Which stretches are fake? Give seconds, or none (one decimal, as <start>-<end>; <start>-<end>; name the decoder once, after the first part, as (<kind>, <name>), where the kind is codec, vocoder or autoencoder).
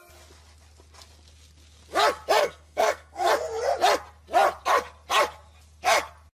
2.4-3.3 (codec, SNAC)